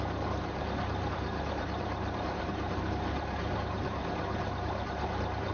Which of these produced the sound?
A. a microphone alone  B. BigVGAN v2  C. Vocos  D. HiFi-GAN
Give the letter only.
B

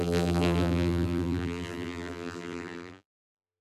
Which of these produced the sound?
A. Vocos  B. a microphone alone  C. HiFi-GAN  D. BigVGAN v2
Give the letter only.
D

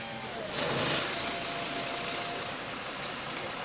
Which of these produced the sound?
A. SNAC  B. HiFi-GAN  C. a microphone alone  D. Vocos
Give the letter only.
C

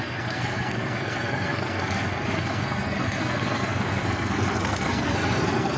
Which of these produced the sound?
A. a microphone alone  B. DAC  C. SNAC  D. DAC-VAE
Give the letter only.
C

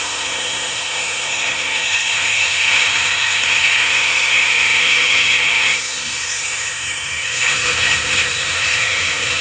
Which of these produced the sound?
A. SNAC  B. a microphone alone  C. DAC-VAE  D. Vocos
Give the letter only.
A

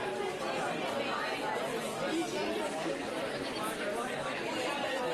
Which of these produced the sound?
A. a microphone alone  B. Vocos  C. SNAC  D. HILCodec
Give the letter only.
A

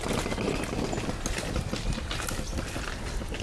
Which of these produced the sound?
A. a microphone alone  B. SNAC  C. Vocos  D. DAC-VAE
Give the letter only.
A